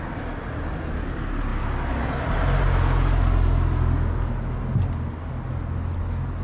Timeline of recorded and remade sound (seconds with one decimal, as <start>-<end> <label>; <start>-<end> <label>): 0.0-6.4 recorded